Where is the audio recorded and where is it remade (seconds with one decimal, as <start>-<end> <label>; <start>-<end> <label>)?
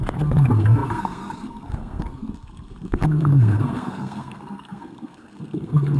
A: 0.0-6.0 remade